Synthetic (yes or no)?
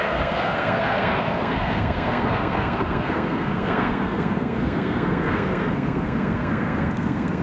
yes